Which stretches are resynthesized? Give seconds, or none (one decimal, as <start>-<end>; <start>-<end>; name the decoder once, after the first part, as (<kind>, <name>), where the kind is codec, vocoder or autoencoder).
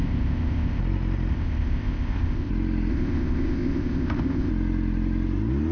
0.0-0.8 (codec, ZipCodec); 1.3-2.5; 2.9-4.5